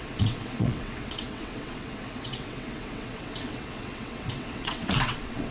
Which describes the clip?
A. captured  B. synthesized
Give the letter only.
B